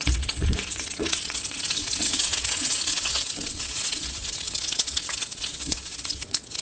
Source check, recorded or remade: remade